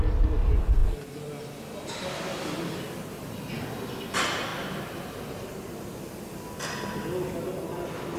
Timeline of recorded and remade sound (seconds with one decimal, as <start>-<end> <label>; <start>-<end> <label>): 0.0-8.2 recorded